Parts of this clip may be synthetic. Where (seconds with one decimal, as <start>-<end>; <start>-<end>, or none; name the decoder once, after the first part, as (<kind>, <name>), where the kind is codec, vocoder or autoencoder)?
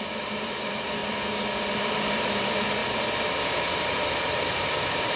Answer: 0.0-1.0 (vocoder, BigVGAN v2); 1.8-2.8; 3.4-5.2